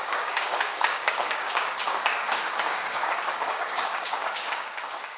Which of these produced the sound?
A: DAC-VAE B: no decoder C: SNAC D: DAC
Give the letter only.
D